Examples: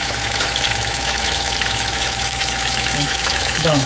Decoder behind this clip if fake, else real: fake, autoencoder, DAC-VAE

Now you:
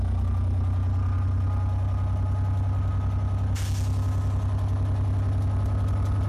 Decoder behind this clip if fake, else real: real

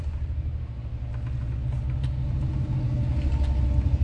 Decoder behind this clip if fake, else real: real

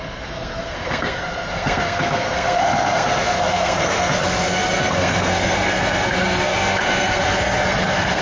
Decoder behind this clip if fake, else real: fake, codec, SNAC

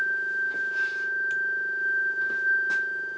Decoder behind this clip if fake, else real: real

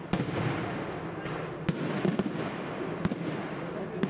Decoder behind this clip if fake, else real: real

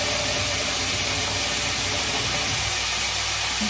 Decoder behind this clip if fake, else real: real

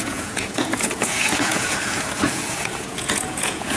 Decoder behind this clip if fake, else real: fake, vocoder, Vocos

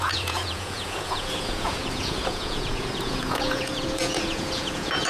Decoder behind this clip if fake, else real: fake, vocoder, Vocos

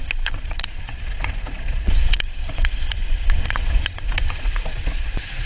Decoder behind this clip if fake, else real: fake, vocoder, Vocos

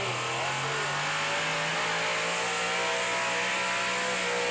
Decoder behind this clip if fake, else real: real